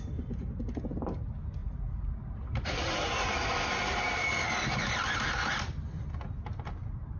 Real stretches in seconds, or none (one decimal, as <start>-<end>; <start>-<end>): 0.0-1.6; 3.1-3.8; 4.3-7.2